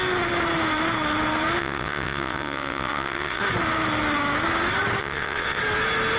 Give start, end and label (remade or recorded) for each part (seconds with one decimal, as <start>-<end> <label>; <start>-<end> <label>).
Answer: 0.0-1.6 recorded; 1.6-3.4 remade; 3.4-5.0 recorded; 5.0-5.6 remade; 5.6-6.2 recorded